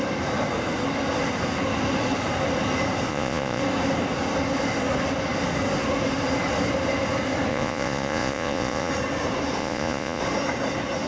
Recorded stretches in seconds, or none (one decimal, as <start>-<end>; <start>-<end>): 0.0-3.1; 3.6-7.5; 8.9-9.6; 10.2-11.1